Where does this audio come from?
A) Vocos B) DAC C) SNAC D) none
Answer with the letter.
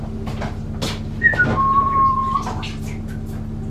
D